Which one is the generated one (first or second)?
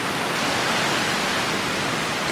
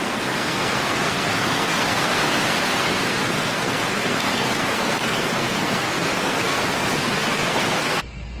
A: second